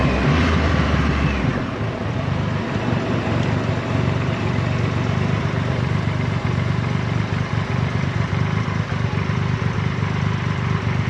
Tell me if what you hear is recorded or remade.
remade